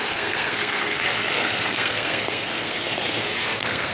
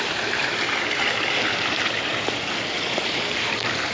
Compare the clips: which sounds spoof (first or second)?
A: first